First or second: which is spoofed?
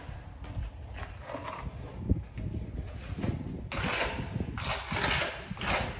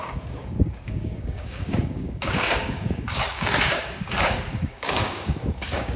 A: second